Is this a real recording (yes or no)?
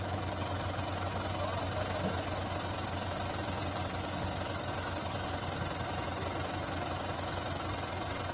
yes